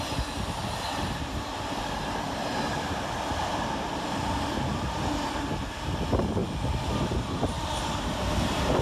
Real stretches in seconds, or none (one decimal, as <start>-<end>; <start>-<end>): 0.0-8.8